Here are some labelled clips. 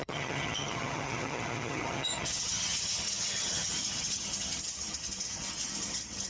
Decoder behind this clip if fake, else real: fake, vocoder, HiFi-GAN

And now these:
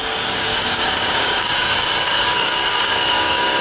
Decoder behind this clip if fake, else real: fake, codec, DAC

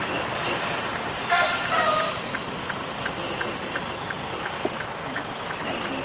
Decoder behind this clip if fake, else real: real